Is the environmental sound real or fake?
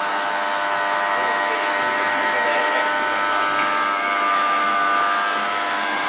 fake